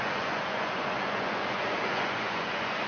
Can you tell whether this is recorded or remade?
remade